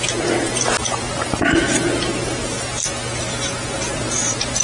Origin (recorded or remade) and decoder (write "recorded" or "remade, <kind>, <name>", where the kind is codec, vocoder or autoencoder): recorded